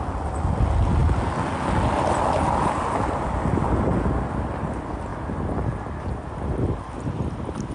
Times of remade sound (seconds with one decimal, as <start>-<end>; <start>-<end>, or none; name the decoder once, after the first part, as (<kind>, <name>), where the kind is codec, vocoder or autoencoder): none